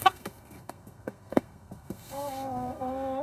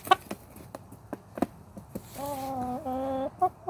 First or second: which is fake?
first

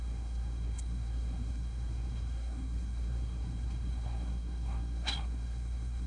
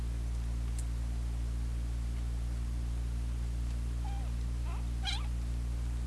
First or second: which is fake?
first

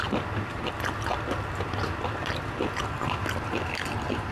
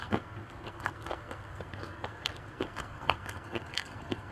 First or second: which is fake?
second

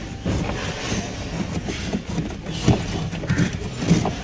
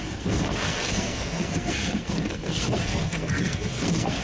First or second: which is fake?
second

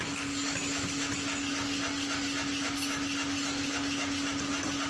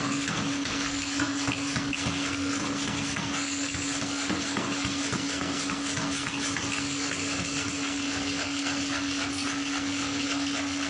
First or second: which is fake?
second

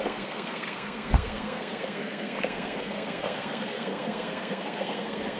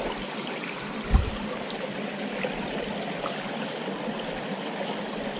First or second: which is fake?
first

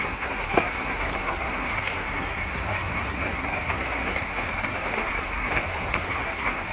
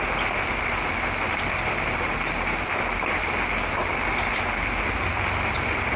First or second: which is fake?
first